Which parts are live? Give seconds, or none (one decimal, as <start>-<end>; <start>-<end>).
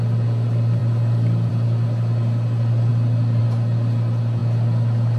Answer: 0.0-5.2